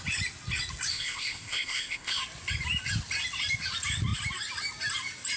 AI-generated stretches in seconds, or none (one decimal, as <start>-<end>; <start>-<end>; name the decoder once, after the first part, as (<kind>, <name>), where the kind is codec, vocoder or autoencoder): 0.9-2.2 (codec, ZipCodec)